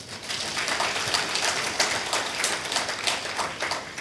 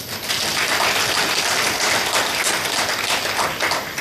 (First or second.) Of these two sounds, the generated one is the first